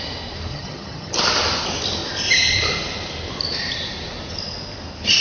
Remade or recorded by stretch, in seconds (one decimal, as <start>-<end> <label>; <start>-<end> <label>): 0.0-0.5 recorded; 0.5-1.1 remade; 1.1-5.2 recorded